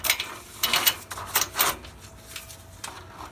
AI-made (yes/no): no